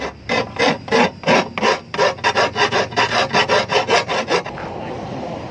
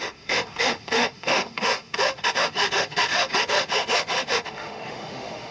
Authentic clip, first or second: first